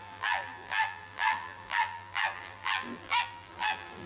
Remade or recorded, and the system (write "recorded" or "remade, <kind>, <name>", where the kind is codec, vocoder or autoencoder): remade, vocoder, BigVGAN v2